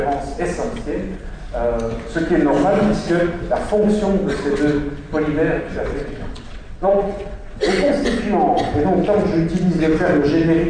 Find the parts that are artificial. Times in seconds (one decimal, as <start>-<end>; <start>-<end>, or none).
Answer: 5.9-7.9

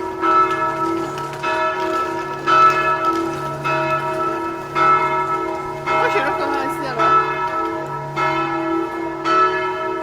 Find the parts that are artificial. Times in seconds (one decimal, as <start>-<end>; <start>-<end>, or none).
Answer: none